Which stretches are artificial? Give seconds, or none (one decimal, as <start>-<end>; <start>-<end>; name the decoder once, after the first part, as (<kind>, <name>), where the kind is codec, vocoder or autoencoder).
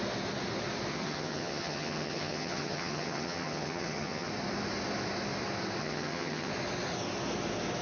0.9-4.3 (vocoder, HiFi-GAN); 5.8-6.5